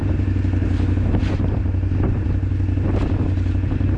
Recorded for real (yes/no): yes